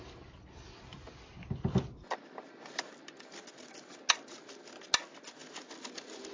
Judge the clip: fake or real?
real